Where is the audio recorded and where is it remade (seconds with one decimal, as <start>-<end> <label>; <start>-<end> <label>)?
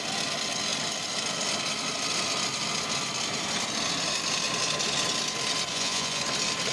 0.0-5.7 recorded; 5.7-6.2 remade; 6.2-6.7 recorded